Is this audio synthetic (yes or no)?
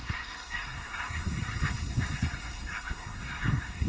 yes